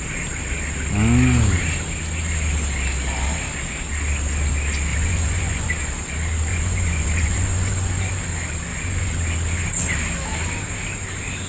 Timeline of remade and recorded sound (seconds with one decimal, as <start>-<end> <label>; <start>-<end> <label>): 0.0-4.9 recorded; 4.9-5.7 remade; 5.7-6.5 recorded; 6.5-8.0 remade; 8.0-8.7 recorded; 8.7-9.2 remade; 9.2-11.5 recorded